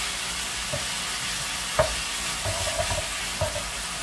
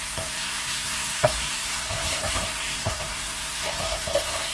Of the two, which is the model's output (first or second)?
second